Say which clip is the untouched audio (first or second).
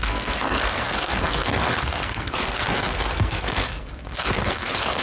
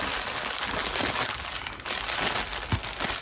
second